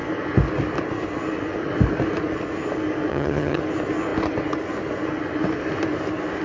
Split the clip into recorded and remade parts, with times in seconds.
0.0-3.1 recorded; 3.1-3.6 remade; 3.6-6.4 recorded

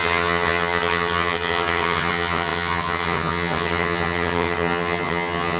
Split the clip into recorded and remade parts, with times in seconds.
0.0-5.6 remade

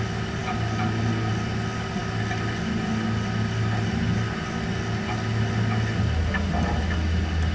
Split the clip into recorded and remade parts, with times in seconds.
0.0-7.5 recorded